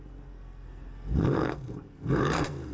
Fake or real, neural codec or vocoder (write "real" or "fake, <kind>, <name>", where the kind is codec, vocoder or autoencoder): fake, codec, SNAC